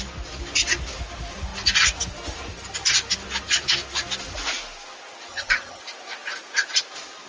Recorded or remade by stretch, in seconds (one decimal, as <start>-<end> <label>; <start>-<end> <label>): 0.0-5.3 recorded; 5.3-5.8 remade; 5.8-7.3 recorded